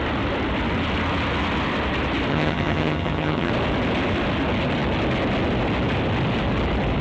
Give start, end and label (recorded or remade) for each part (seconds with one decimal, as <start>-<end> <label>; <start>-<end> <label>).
0.0-2.3 recorded; 2.3-3.5 remade; 3.5-7.0 recorded